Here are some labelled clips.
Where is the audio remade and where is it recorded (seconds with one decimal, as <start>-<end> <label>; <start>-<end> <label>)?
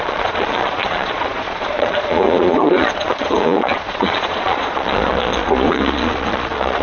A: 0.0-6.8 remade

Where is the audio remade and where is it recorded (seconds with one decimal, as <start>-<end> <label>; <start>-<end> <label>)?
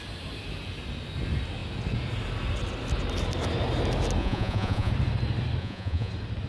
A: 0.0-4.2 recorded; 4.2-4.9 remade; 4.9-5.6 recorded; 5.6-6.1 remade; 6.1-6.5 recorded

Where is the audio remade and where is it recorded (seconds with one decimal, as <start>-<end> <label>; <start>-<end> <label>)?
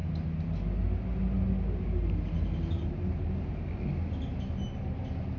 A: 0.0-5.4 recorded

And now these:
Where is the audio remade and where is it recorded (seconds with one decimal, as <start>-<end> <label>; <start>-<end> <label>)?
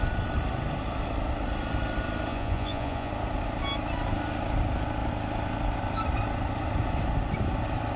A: 0.0-2.3 recorded; 2.3-3.1 remade; 3.1-8.0 recorded